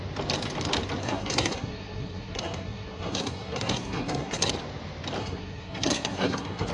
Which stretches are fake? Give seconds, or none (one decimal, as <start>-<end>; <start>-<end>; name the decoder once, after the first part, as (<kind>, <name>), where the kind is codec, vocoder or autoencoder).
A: 1.0-4.5 (codec, SNAC); 5.2-6.7